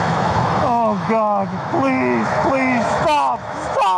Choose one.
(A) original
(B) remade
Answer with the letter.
B